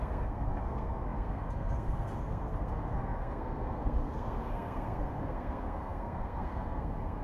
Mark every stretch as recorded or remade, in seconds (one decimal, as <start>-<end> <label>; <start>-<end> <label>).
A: 0.0-7.2 remade